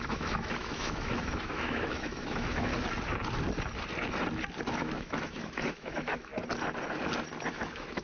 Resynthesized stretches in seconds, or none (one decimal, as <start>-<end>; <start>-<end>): 0.0-2.7; 4.7-6.3; 7.5-8.0